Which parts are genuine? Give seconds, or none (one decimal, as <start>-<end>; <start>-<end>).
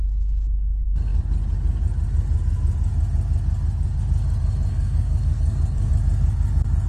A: 0.0-4.7; 5.9-6.9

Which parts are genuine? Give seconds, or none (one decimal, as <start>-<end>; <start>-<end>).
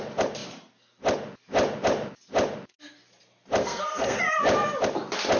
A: 0.0-3.6; 4.2-5.4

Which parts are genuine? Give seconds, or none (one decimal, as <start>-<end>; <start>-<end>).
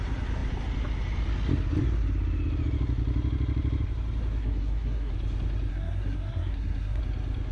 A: 0.0-4.4; 5.1-5.7; 7.0-7.5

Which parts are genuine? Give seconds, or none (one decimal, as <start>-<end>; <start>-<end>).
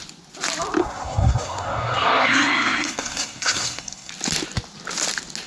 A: 0.0-0.8; 4.1-5.5